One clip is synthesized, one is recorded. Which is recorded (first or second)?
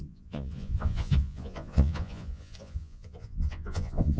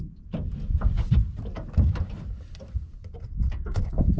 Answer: second